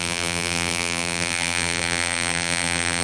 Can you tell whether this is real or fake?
fake